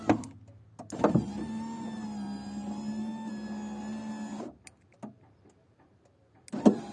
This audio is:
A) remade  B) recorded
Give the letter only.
B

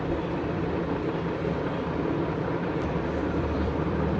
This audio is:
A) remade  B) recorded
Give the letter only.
A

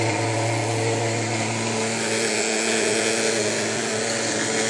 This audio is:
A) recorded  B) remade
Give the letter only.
A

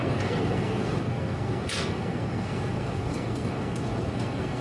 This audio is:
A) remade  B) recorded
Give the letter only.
A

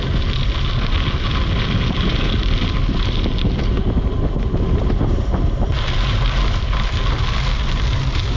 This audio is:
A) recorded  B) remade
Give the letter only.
A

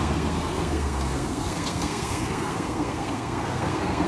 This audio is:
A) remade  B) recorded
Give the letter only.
A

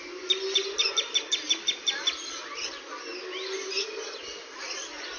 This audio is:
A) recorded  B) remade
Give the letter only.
A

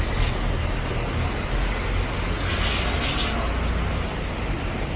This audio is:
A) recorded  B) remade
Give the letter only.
A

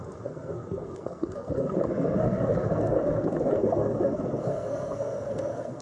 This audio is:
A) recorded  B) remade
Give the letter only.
B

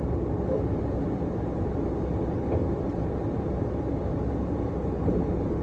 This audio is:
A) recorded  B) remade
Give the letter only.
A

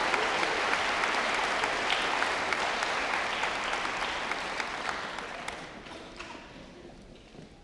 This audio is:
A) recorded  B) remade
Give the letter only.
A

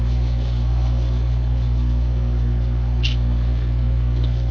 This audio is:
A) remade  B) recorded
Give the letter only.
A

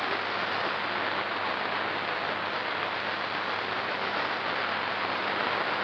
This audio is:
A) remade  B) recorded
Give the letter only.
B